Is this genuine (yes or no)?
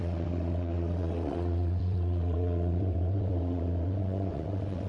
no